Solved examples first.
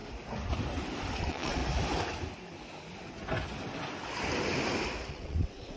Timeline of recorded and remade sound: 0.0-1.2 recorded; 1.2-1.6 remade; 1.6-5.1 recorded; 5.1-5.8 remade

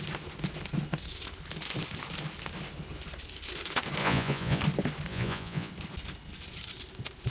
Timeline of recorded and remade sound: 0.0-4.0 recorded; 4.0-4.6 remade; 4.6-5.1 recorded; 5.1-5.7 remade; 5.7-7.3 recorded

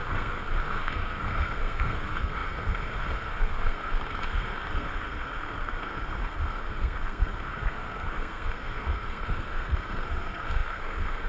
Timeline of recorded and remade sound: 0.0-11.3 remade

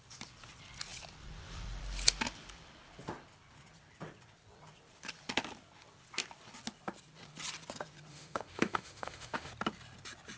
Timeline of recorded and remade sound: 0.0-8.1 recorded; 8.1-9.5 remade; 9.5-10.4 recorded